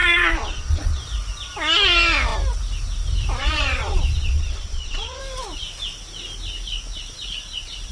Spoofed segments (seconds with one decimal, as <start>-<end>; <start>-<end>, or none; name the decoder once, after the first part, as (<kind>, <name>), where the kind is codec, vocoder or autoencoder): 0.0-1.0 (vocoder, Vocos); 3.4-5.2

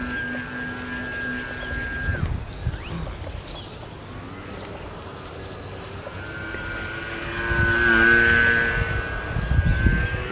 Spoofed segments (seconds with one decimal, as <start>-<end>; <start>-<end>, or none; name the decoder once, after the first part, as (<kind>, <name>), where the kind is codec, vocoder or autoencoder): none